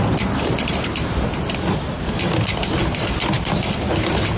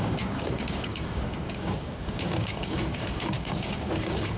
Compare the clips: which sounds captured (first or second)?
first